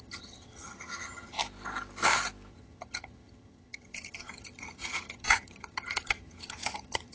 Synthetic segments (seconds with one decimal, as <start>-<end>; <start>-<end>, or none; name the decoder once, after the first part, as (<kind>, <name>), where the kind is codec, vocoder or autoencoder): 0.0-1.4 (vocoder, HiFi-GAN); 2.5-7.1